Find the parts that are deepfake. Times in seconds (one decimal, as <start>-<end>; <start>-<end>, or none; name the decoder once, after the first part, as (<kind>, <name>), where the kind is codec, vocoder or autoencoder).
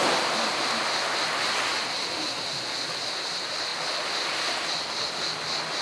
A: none